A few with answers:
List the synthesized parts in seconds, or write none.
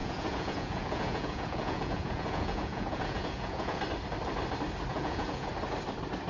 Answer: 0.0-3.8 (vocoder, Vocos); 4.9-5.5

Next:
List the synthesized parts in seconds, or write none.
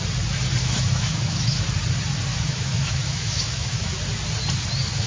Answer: 0.6-1.6 (autoencoder, DAC-VAE); 2.3-3.9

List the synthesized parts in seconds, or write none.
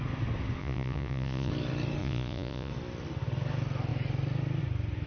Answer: 0.6-1.5 (vocoder, Vocos); 2.0-2.7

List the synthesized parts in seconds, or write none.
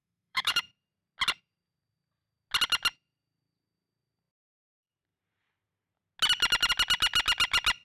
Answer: 0.0-0.6 (autoencoder, DAC-VAE)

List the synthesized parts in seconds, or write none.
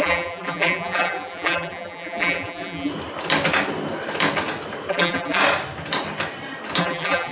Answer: 0.0-2.9 (vocoder, BigVGAN v2); 4.9-5.4; 6.8-7.3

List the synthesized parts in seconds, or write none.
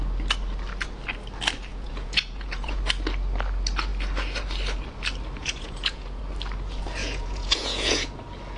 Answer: 1.7-2.8 (vocoder, Vocos); 5.4-6.2; 7.0-8.1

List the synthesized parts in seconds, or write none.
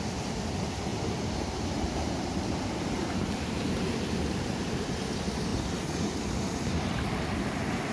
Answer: 0.9-4.2 (vocoder, BigVGAN v2)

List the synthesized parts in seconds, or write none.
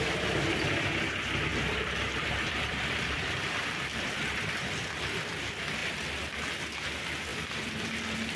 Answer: 1.5-4.6 (vocoder, BigVGAN v2); 7.3-7.9